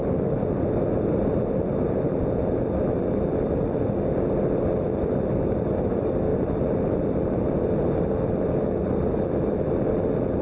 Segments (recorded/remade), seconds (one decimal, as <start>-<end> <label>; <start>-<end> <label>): 0.0-10.4 recorded